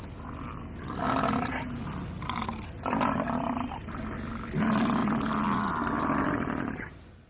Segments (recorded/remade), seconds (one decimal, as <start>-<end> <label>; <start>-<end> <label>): 0.0-7.3 recorded